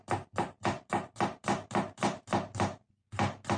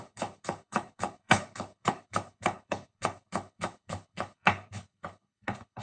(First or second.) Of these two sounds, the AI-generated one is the second